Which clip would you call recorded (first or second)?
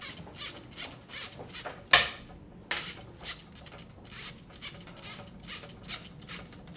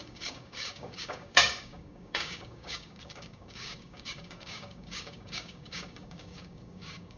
first